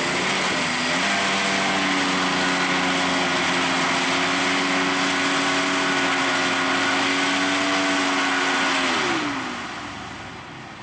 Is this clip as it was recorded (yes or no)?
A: yes